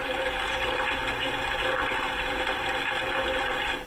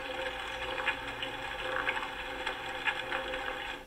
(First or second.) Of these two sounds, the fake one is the first